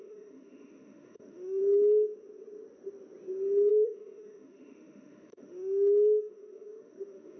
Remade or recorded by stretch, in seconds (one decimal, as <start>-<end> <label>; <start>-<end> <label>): 0.0-1.6 remade; 1.6-3.7 recorded; 3.7-7.4 remade